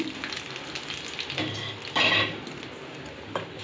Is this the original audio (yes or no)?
yes